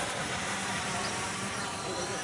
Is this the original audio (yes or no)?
no